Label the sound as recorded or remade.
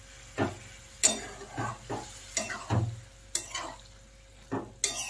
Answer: recorded